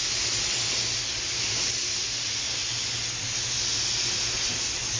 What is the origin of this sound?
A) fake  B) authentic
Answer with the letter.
B